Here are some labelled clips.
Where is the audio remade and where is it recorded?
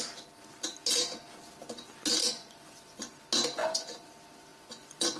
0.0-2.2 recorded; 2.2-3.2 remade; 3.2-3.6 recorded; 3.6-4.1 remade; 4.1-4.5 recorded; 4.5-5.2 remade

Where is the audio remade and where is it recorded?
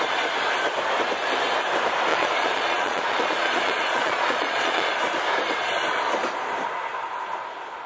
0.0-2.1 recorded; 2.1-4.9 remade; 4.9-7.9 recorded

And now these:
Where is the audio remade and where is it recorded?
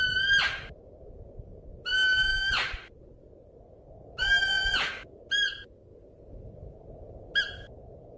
0.0-8.2 recorded